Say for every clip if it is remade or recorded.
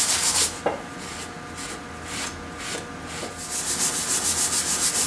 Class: recorded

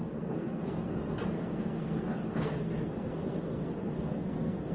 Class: remade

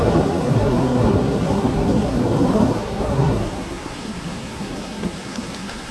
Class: remade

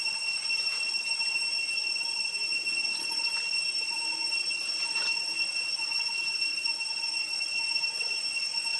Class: recorded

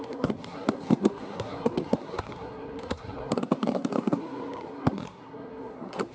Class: remade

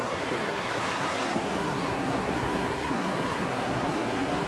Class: remade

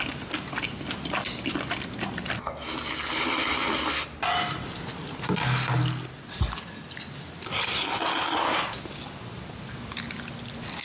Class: recorded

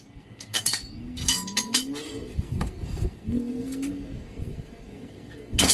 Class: remade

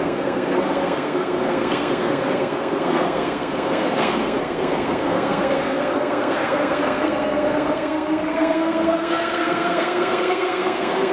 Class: remade